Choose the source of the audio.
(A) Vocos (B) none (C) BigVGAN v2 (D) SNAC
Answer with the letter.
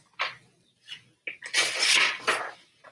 B